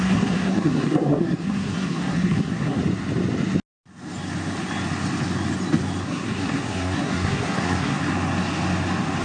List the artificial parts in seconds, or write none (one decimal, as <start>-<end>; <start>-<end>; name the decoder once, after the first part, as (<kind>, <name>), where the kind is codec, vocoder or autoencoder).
0.0-2.8 (codec, SNAC); 6.0-8.0